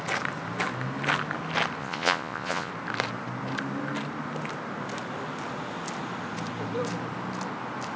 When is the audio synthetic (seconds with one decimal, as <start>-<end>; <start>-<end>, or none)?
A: 1.8-2.7